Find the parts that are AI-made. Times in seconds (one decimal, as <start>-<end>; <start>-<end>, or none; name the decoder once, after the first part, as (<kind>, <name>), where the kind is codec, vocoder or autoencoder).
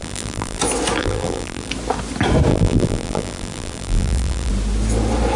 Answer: 0.0-0.6 (vocoder, BigVGAN v2); 1.0-1.7; 2.5-4.5